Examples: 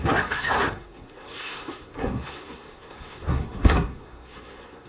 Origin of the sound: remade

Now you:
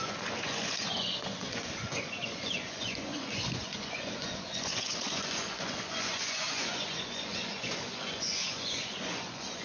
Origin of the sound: remade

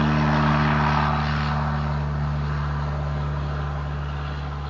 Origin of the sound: recorded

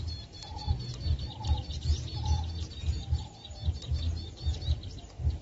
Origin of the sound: recorded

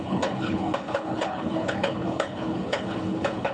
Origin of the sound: remade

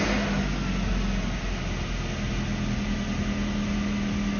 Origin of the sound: recorded